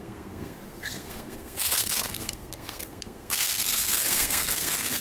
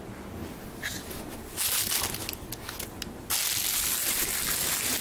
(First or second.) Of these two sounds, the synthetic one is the first